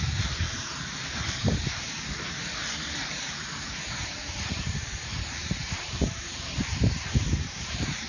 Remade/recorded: remade